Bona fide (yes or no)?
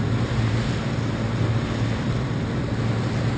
yes